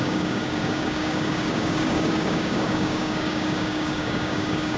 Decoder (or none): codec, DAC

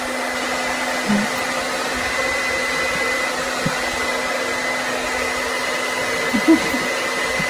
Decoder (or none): none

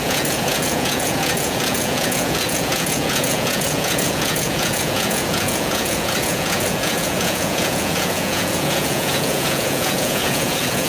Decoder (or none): vocoder, Vocos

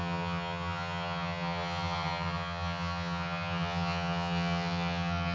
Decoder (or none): vocoder, HiFi-GAN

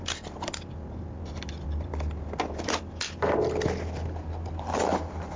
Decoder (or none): none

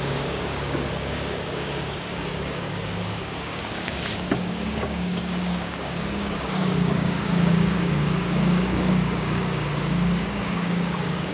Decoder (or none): codec, DAC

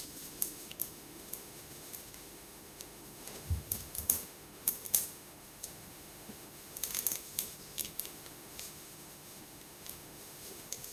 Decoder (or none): autoencoder, DAC-VAE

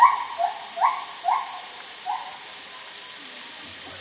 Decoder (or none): none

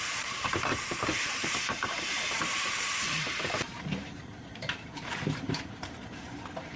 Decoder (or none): vocoder, BigVGAN v2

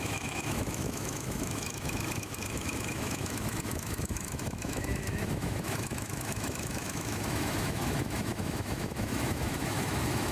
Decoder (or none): autoencoder, DAC-VAE